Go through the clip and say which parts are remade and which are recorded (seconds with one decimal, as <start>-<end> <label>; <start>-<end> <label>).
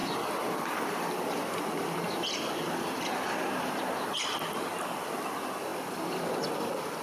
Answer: 0.0-4.2 remade; 4.2-7.0 recorded